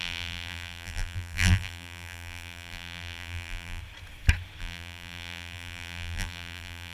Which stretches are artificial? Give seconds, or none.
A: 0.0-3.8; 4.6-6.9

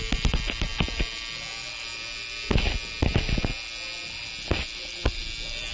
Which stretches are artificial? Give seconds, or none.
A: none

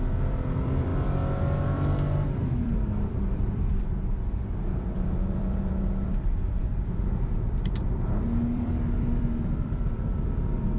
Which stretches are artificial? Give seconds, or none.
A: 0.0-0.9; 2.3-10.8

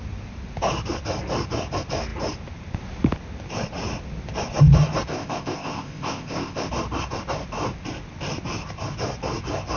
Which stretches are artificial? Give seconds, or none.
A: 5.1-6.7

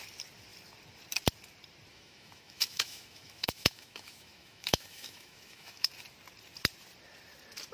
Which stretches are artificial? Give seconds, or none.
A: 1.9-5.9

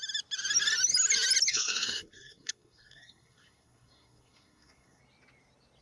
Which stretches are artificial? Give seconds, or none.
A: 1.5-5.0

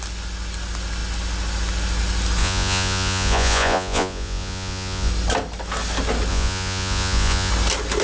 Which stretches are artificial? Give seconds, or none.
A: 2.4-5.1; 6.3-7.5